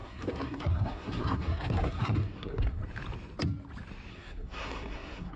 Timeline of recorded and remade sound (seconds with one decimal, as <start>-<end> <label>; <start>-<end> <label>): 0.0-2.8 remade; 2.8-4.1 recorded; 4.1-5.4 remade